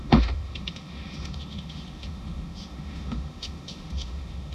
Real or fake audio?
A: fake